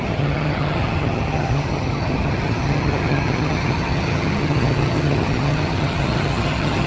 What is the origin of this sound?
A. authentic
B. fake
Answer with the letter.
B